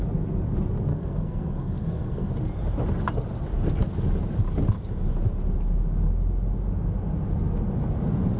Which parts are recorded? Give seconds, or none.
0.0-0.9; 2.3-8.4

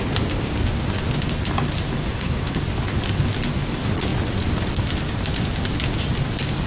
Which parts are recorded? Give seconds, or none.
0.0-2.1; 2.6-6.7

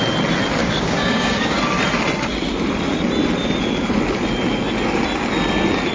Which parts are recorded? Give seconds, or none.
0.0-0.6; 1.6-5.9

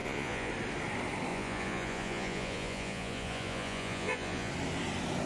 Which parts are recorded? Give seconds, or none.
0.5-1.3; 4.5-5.3

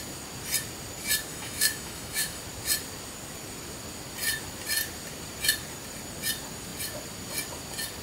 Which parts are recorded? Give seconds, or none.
0.0-1.3; 2.4-8.0